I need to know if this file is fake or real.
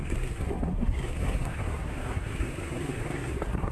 fake